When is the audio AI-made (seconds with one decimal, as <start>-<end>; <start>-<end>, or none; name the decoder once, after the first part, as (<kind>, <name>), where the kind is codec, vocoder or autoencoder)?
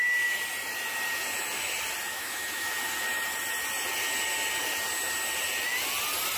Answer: 2.1-2.7 (autoencoder, DAC-VAE)